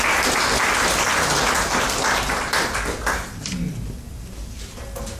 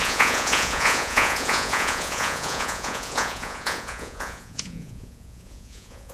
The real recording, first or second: first